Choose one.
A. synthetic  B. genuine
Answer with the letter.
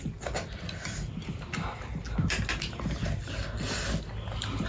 B